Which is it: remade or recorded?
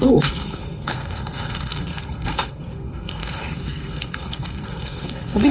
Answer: remade